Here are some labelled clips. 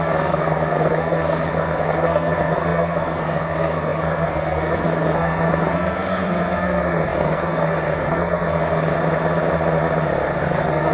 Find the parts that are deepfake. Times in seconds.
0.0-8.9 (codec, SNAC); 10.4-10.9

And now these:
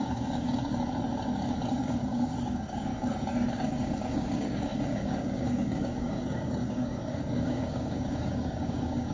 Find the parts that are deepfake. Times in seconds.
0.0-0.6 (codec, DAC); 1.7-2.9; 3.5-9.1

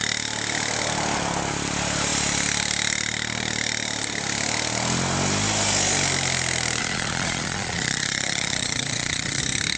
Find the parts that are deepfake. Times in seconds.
6.8-9.4 (vocoder, Vocos)

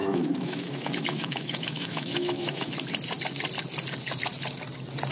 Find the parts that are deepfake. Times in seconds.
0.0-2.7 (autoencoder, DAC-VAE)

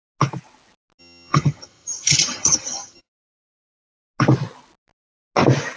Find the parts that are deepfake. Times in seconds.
1.0-3.0 (vocoder, HiFi-GAN)

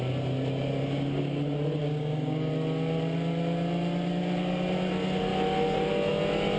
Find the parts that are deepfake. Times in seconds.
1.8-2.5 (codec, DAC)

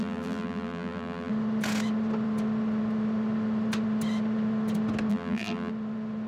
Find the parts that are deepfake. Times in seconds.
0.0-1.3 (vocoder, BigVGAN v2); 5.1-5.7